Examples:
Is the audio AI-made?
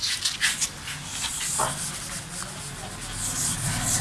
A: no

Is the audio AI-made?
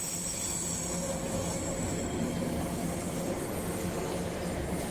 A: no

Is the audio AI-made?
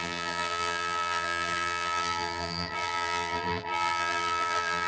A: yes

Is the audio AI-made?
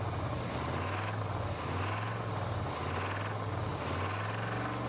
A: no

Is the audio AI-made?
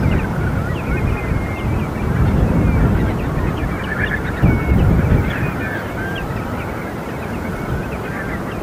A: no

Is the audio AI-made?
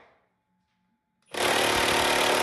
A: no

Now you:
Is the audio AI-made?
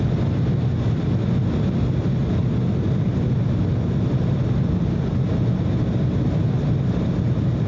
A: no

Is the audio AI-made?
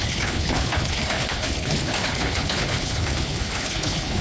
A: yes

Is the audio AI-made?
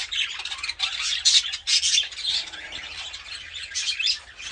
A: no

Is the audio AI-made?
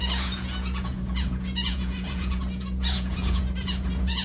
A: yes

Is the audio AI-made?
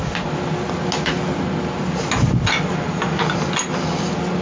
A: no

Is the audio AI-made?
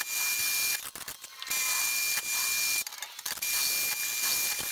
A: no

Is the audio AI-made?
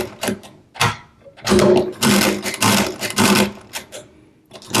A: no